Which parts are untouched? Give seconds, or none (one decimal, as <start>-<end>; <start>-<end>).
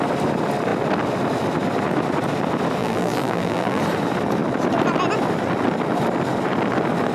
0.0-2.8; 3.8-7.1